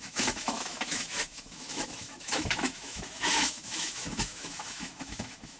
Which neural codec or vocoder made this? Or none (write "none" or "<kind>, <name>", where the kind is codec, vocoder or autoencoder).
autoencoder, DAC-VAE